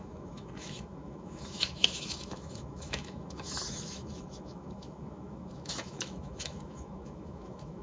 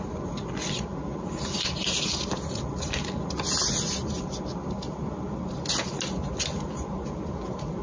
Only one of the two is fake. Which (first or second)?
first